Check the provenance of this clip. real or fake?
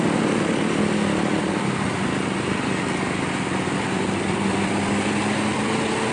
real